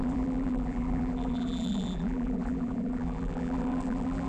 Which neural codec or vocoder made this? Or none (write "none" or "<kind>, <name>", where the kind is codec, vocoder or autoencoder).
vocoder, BigVGAN v2